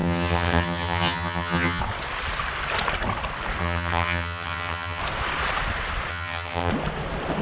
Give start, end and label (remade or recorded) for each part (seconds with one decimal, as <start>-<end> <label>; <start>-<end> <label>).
0.0-1.8 remade; 1.8-3.6 recorded; 3.6-5.0 remade; 5.0-6.1 recorded; 6.1-6.7 remade; 6.7-7.4 recorded